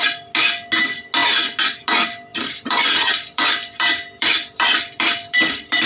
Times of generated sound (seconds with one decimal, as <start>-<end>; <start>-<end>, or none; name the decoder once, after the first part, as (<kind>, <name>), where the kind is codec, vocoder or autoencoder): 2.3-5.9 (vocoder, BigVGAN v2)